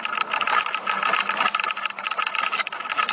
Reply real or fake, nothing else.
real